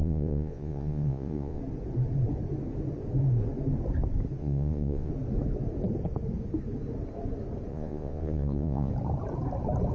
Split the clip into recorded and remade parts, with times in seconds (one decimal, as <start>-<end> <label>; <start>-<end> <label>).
0.0-1.6 remade; 1.6-4.4 recorded; 4.4-5.1 remade; 5.1-7.7 recorded; 7.7-8.9 remade; 8.9-9.9 recorded